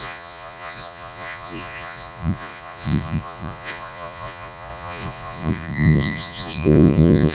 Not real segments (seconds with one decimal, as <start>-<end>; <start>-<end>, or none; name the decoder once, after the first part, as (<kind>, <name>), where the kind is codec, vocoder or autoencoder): 0.0-7.3 (vocoder, Vocos)